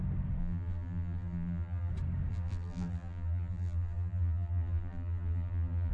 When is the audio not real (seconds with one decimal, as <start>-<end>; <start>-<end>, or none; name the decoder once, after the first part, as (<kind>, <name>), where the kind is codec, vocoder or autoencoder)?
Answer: 0.4-1.9 (vocoder, BigVGAN v2); 2.3-5.9